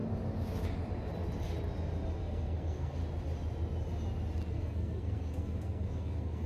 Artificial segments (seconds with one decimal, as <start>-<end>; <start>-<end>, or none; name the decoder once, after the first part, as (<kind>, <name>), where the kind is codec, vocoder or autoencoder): 2.2-3.0 (codec, SNAC); 4.5-6.5